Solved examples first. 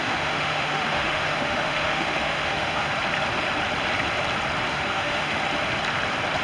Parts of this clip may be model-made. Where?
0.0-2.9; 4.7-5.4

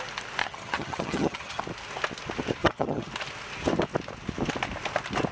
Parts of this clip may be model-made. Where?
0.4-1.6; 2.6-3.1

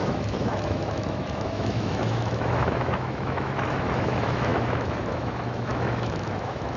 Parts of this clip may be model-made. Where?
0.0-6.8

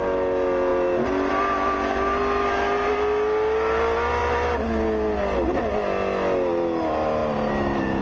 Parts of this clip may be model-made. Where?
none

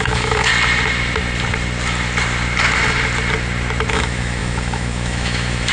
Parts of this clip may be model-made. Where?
0.0-0.5; 3.9-5.7

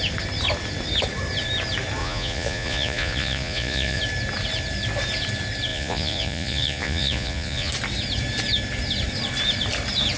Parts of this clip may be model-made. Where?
2.0-4.0; 5.7-7.7

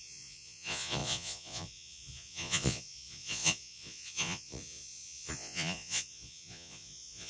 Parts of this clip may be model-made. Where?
0.0-7.3

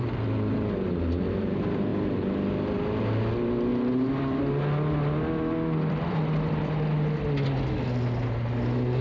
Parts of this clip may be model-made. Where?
none